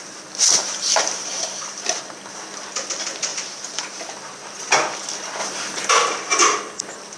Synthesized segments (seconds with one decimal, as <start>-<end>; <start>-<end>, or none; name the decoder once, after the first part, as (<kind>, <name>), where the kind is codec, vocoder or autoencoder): 0.6-2.0 (vocoder, BigVGAN v2); 3.3-4.1; 5.4-5.9